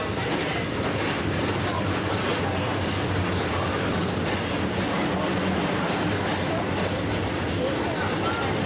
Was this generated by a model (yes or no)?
no